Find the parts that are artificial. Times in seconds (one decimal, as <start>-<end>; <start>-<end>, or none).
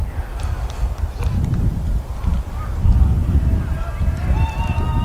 none